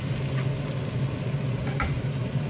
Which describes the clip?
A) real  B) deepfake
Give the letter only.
A